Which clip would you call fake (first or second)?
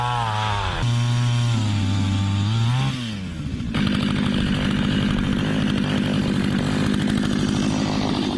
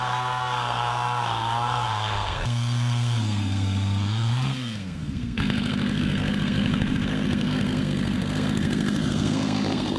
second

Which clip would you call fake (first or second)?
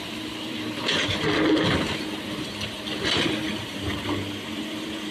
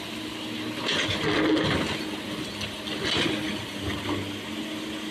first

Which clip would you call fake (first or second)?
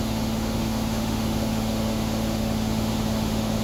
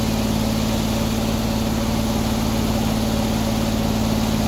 first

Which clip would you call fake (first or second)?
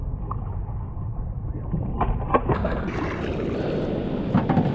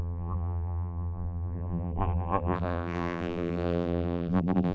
second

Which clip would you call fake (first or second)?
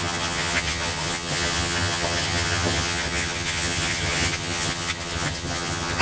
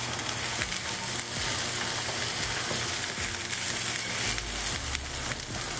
first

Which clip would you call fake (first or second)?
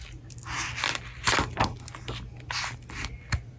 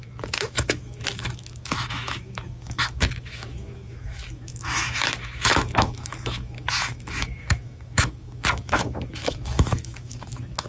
second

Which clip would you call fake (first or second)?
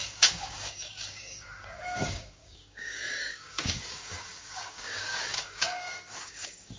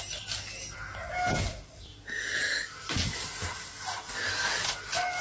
first